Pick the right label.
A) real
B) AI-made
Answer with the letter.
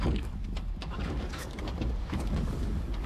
B